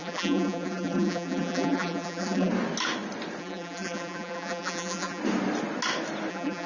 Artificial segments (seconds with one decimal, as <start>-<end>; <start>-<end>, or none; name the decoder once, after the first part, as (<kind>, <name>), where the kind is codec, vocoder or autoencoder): 0.0-2.5 (vocoder, BigVGAN v2); 3.4-5.2; 6.3-6.7